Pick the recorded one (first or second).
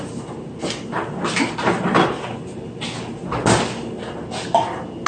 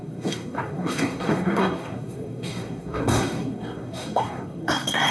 first